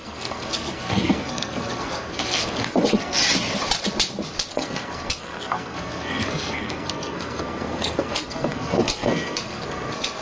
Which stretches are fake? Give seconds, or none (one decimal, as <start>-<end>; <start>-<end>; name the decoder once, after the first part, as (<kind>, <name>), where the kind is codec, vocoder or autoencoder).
0.0-3.2 (codec, SNAC); 4.5-10.2